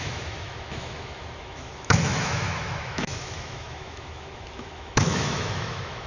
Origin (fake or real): fake